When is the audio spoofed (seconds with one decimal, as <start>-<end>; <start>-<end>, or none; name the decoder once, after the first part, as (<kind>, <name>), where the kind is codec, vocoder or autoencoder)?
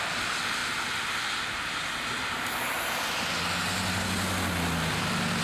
none